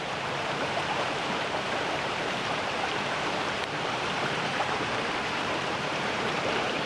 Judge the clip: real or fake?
fake